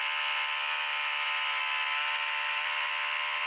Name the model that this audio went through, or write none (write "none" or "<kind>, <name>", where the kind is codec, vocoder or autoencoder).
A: none